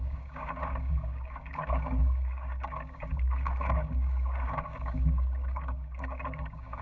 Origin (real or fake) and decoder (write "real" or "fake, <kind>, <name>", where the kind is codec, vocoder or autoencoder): fake, codec, DAC